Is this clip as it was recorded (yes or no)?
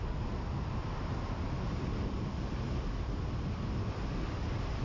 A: yes